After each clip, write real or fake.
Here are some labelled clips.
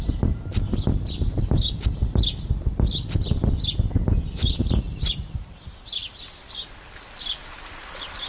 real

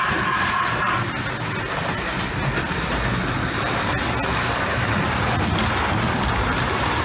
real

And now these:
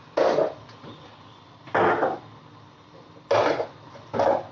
real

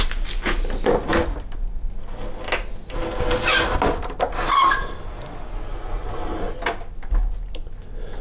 real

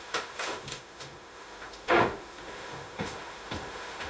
fake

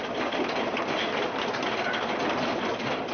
real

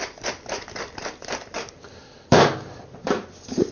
fake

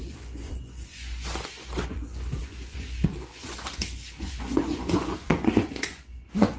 fake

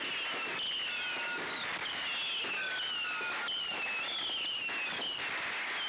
real